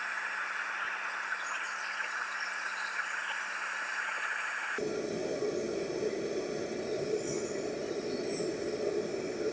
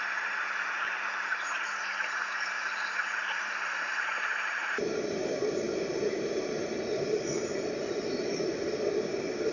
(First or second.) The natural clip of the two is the first